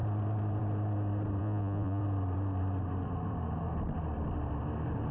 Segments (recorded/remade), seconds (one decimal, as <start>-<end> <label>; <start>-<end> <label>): 0.0-1.4 recorded; 1.4-2.0 remade; 2.0-5.1 recorded

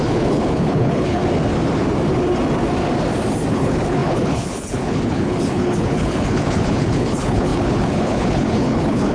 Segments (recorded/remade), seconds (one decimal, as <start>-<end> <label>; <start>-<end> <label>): 0.0-1.2 remade; 1.2-3.5 recorded; 3.5-9.1 remade

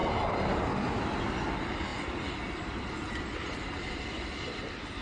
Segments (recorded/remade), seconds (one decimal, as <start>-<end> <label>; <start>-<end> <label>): 0.0-1.9 recorded; 1.9-4.6 remade; 4.6-5.0 recorded

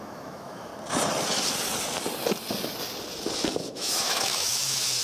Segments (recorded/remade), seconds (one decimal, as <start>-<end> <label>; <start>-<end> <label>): 0.0-0.7 remade; 0.7-3.7 recorded; 3.7-5.0 remade

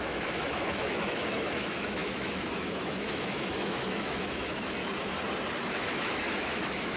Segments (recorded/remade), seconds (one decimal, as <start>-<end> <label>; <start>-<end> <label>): 0.0-4.8 remade; 4.8-5.7 recorded; 5.7-7.0 remade

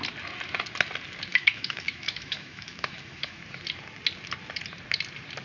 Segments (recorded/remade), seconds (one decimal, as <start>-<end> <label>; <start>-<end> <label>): 0.0-1.3 recorded; 1.3-3.4 remade; 3.4-5.4 recorded

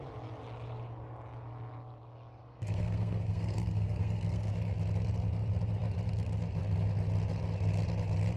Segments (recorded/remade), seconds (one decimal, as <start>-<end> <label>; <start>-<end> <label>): 0.0-2.4 recorded; 2.4-4.5 remade; 4.5-8.4 recorded